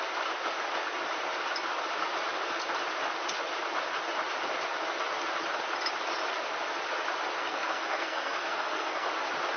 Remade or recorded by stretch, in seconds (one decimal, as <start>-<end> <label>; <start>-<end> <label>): 0.0-7.4 recorded; 7.4-9.1 remade; 9.1-9.6 recorded